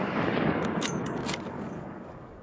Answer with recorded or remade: remade